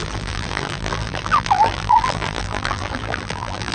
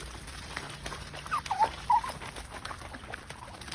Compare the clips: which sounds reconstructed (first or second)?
first